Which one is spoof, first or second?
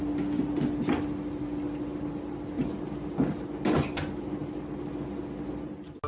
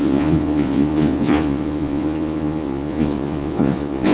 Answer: second